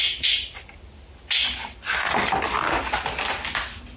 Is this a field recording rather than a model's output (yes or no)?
yes